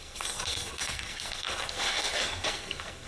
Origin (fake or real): fake